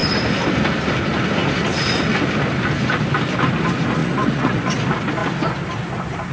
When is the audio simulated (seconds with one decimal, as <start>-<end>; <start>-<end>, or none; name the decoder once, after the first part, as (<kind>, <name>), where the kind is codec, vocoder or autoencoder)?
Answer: 4.0-4.6 (vocoder, Vocos)